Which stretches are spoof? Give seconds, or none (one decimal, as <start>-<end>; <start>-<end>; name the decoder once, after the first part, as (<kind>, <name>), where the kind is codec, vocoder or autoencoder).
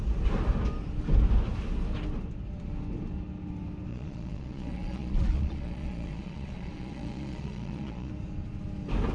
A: 3.9-8.1 (vocoder, Vocos)